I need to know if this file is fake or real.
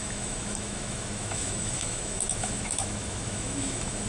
fake